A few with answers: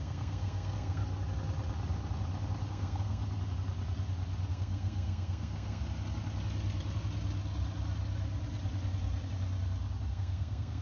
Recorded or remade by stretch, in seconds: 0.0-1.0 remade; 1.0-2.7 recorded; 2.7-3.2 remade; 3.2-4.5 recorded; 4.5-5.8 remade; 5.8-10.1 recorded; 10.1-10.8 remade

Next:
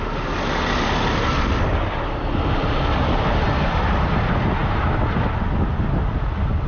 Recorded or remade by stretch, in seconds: 0.0-6.7 recorded

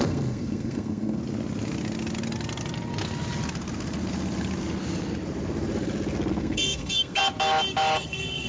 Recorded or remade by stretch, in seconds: 0.0-1.2 remade; 1.2-6.3 recorded; 6.3-7.2 remade; 7.2-8.0 recorded; 8.0-8.5 remade

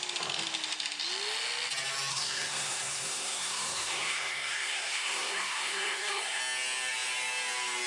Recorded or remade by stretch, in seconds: 0.0-2.1 recorded; 2.1-6.4 remade; 6.4-7.9 recorded

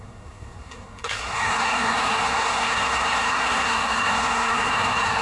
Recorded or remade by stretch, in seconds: 0.0-5.2 remade